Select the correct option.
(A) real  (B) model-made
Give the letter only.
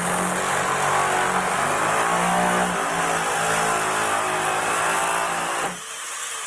A